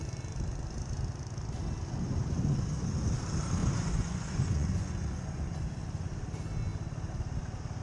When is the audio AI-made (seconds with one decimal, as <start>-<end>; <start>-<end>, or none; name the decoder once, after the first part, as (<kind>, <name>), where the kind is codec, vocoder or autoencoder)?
3.6-5.6 (vocoder, Vocos)